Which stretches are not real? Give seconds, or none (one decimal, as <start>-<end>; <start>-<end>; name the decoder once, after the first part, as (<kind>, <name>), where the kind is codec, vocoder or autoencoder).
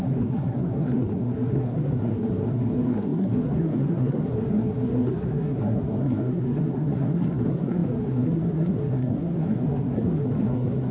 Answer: 0.0-10.9 (codec, SNAC)